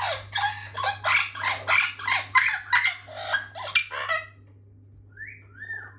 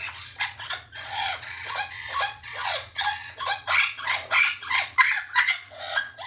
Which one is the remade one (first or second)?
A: second